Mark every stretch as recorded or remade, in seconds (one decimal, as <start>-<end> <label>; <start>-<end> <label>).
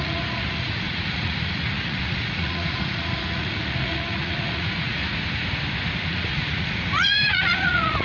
0.0-5.0 remade; 5.0-6.0 recorded; 6.0-8.0 remade